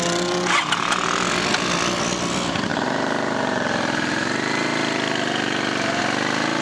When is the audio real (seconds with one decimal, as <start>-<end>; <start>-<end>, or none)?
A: 0.0-2.7; 6.0-6.6